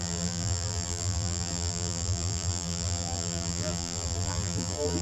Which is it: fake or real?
fake